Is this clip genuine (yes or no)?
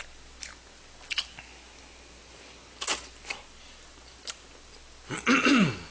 yes